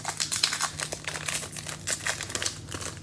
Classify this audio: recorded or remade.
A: recorded